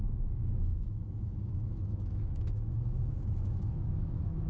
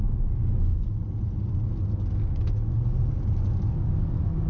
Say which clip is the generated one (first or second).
first